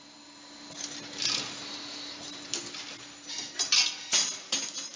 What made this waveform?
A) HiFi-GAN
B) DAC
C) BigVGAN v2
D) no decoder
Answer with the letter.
D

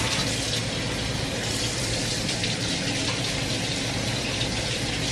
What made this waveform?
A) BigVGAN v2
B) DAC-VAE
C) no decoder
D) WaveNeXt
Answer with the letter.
C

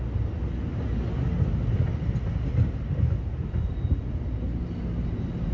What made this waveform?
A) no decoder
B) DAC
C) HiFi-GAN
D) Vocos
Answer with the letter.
A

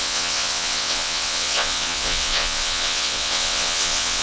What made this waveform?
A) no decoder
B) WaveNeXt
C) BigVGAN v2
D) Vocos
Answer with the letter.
B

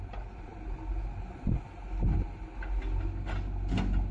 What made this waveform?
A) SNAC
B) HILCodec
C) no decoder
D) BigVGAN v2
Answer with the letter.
C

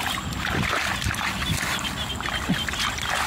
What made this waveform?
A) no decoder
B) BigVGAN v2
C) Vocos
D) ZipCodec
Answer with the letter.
A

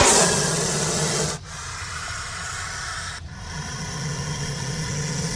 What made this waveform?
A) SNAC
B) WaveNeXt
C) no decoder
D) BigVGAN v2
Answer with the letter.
C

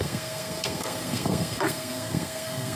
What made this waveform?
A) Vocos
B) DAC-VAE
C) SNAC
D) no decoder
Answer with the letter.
C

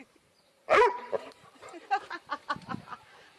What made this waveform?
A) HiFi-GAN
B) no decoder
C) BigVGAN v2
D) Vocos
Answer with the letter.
C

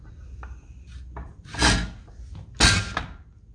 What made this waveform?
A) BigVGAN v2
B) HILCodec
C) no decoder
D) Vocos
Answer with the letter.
C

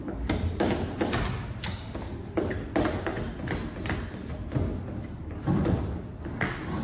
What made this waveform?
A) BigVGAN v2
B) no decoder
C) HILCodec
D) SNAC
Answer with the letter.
B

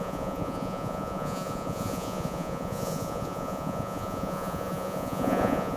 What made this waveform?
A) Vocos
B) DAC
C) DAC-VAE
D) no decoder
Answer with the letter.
A